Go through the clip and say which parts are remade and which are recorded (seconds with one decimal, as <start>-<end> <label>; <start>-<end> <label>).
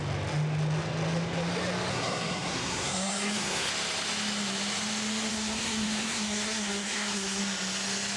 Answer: 0.0-1.9 recorded; 1.9-3.7 remade; 3.7-5.3 recorded; 5.3-7.4 remade; 7.4-8.2 recorded